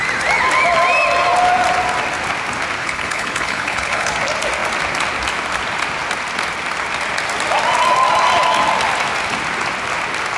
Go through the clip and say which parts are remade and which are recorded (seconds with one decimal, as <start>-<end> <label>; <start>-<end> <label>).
0.0-2.8 recorded; 2.8-4.1 remade; 4.1-10.4 recorded